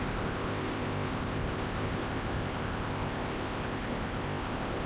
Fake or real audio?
fake